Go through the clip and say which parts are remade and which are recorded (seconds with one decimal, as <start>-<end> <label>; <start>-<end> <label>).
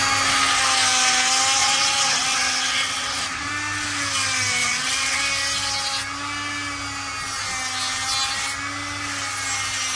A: 0.0-1.6 recorded; 1.6-3.5 remade; 3.5-4.6 recorded; 4.6-5.2 remade; 5.2-10.0 recorded